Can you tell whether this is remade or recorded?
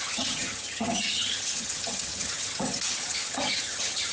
remade